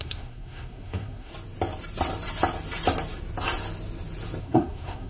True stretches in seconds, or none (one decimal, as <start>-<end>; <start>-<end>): 1.3-4.4